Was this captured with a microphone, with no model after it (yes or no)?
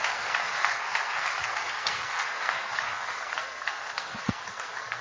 no